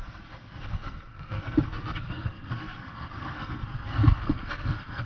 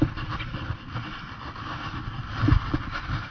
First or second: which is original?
second